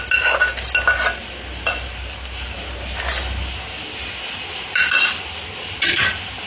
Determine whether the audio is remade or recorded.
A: recorded